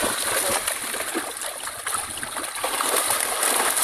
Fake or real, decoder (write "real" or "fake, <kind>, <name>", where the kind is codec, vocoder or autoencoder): real